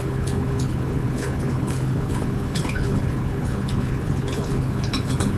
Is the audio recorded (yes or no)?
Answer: no